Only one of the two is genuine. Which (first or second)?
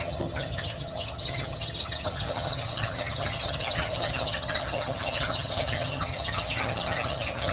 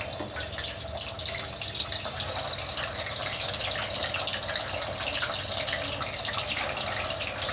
second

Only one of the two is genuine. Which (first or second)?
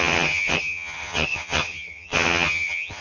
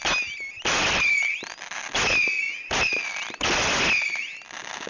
second